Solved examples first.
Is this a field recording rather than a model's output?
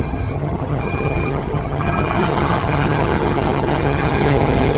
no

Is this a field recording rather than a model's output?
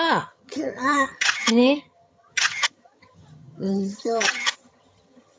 no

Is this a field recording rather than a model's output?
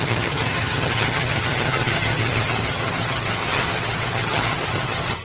no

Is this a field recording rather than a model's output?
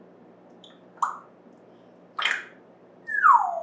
yes